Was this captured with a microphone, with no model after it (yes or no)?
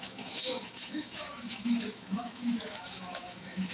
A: no